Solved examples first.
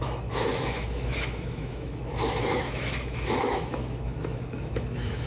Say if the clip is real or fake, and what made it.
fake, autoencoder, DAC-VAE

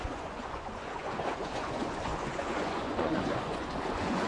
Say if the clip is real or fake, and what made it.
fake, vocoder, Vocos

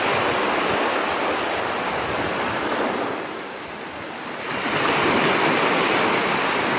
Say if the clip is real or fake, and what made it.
real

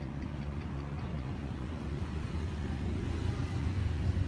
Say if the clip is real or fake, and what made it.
fake, vocoder, Vocos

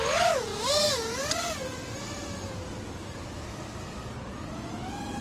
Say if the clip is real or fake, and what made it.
real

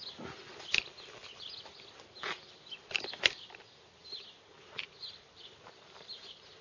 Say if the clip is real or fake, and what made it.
real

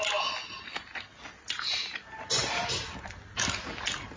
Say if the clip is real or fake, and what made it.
real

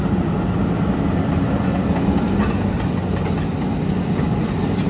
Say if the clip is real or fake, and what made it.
real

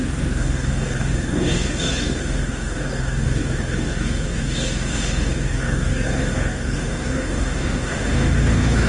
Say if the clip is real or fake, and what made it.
fake, codec, DAC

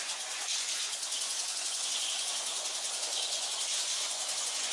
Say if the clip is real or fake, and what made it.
fake, vocoder, Vocos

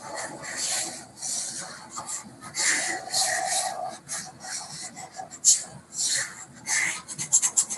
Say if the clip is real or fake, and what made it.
real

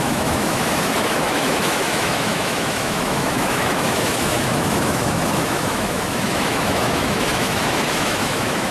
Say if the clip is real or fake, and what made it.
fake, autoencoder, DAC-VAE